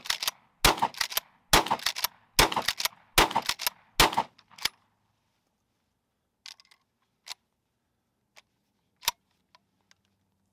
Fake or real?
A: real